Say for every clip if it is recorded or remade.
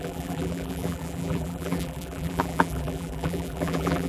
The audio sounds remade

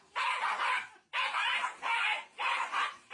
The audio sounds recorded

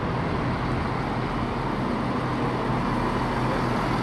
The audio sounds recorded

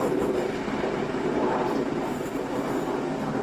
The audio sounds recorded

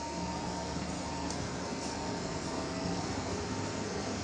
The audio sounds remade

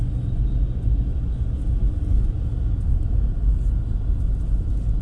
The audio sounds recorded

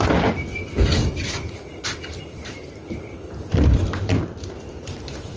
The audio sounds recorded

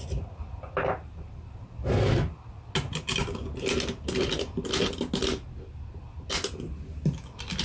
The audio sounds recorded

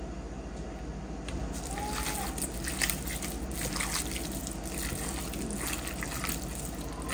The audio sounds recorded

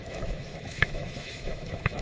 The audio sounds remade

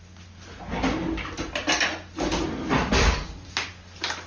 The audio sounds recorded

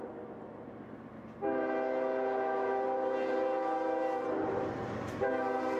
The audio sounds recorded